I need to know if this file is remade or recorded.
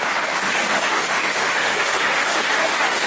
remade